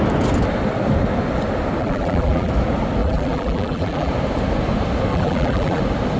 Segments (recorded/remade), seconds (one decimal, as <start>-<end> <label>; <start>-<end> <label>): 0.0-1.8 recorded; 1.8-2.5 remade; 2.5-3.0 recorded; 3.0-4.1 remade; 4.1-5.1 recorded; 5.1-5.8 remade; 5.8-6.2 recorded